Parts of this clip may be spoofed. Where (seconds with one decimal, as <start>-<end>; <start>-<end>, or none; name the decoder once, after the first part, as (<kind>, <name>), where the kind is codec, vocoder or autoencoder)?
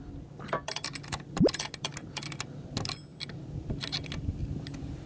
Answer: none